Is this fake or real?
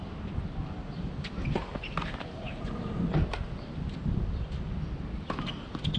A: real